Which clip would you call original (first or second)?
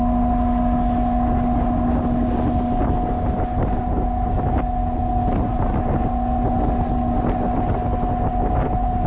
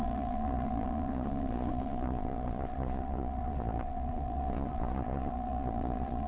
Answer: first